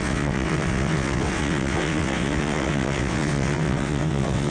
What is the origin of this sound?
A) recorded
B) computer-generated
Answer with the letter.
B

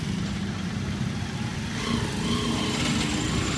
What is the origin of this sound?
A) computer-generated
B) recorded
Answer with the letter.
B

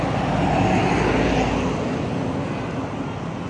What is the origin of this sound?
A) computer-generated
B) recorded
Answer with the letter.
B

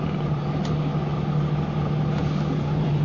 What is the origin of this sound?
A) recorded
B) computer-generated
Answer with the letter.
A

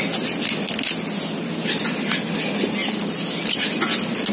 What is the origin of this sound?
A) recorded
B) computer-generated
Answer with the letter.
A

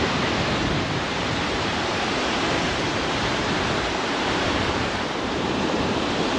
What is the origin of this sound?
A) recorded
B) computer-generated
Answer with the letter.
B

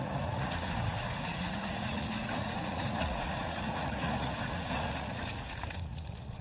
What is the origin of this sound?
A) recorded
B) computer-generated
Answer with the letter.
B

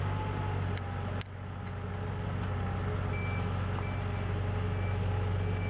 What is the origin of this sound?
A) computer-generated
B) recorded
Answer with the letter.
B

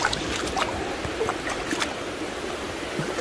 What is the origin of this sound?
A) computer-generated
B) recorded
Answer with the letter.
B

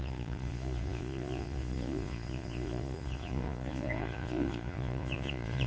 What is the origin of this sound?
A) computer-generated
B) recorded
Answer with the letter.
A